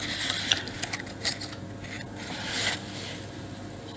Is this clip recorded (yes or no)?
yes